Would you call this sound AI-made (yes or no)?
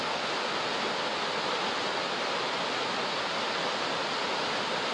no